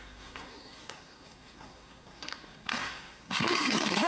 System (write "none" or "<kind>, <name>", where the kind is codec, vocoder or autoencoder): codec, SNAC